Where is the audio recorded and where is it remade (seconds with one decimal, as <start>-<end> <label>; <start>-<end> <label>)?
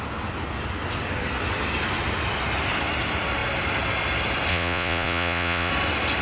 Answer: 0.0-4.5 recorded; 4.5-5.7 remade; 5.7-6.2 recorded